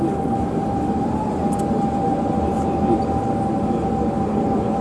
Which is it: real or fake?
real